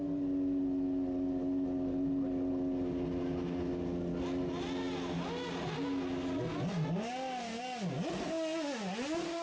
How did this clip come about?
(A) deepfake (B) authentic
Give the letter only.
B